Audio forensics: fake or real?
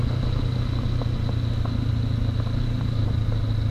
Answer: real